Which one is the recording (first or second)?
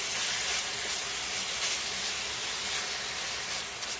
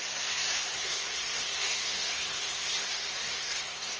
first